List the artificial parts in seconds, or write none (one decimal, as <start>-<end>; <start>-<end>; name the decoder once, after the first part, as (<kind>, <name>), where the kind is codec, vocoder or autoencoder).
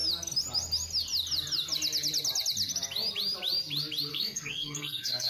4.1-5.3 (codec, SNAC)